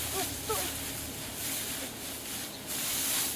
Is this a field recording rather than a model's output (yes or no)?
yes